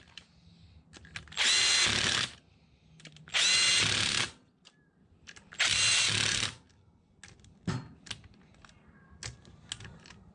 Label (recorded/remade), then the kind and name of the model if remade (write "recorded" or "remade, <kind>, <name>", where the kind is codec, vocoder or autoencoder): recorded